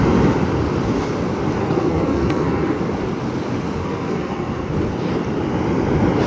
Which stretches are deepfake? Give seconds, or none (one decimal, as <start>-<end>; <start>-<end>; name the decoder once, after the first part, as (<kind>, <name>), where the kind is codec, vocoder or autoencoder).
1.6-2.8 (codec, SNAC); 3.8-4.7